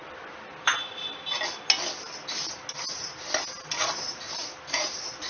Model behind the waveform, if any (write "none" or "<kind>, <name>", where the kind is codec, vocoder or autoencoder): none